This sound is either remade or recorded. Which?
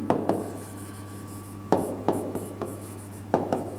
remade